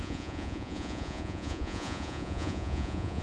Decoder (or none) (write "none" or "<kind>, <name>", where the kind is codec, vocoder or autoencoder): vocoder, Vocos